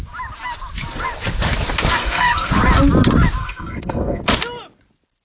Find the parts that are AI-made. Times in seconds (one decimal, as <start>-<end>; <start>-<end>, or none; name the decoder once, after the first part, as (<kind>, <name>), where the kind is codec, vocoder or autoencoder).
2.0-2.5 (codec, SNAC); 3.4-4.2